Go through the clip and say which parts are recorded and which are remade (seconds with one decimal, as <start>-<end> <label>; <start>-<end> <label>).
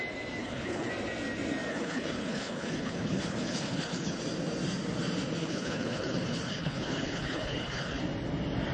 0.0-0.4 recorded; 0.4-0.9 remade; 0.9-1.7 recorded; 1.7-4.2 remade; 4.2-5.4 recorded; 5.4-8.0 remade; 8.0-8.7 recorded